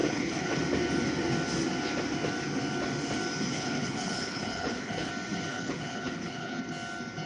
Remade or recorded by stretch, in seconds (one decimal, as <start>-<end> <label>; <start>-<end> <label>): 0.0-0.6 remade; 0.6-3.5 recorded; 3.5-5.1 remade; 5.1-5.5 recorded; 5.5-6.6 remade; 6.6-7.3 recorded